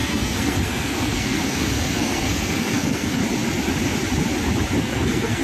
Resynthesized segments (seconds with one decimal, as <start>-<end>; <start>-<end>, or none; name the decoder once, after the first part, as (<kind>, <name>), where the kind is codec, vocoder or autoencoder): 0.0-3.2 (codec, SNAC); 4.8-5.4